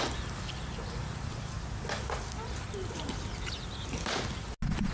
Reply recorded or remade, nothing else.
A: recorded